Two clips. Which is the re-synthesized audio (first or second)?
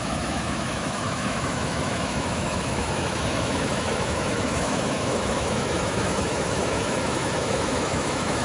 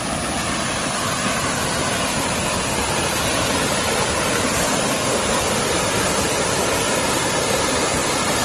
first